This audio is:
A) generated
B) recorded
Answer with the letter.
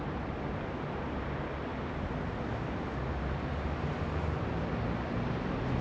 B